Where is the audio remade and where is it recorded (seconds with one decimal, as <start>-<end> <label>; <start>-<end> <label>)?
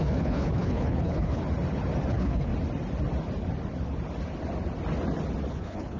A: 0.0-1.4 remade; 1.4-2.1 recorded; 2.1-2.5 remade; 2.5-5.5 recorded; 5.5-6.0 remade